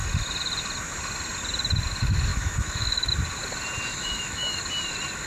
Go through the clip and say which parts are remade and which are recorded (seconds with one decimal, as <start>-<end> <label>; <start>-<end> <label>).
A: 0.0-2.3 recorded; 2.3-3.1 remade; 3.1-3.9 recorded; 3.9-4.6 remade; 4.6-5.3 recorded